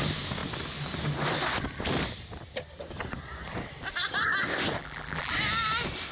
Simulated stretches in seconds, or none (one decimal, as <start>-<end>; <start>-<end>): 4.8-5.3